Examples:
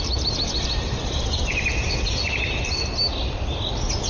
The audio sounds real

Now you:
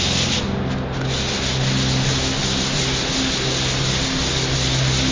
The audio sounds real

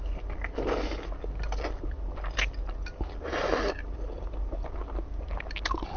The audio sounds real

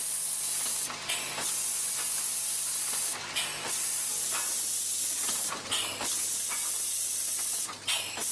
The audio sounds real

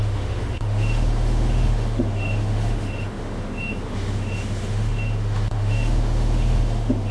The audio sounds fake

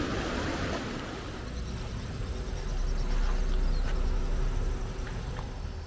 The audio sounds real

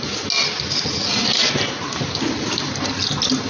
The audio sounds real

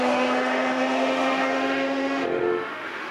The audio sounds fake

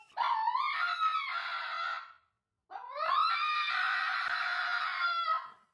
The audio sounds real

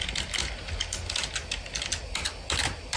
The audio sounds real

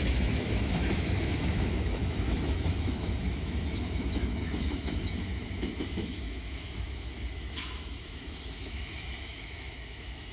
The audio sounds fake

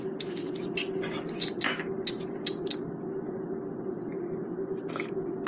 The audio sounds real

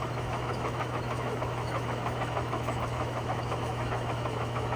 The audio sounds fake